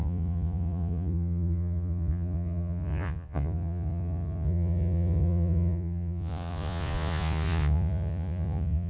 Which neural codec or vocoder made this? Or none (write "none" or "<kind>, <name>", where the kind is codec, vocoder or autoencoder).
vocoder, Vocos